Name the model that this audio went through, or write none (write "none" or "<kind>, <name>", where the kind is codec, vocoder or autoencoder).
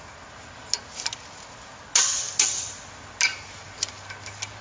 none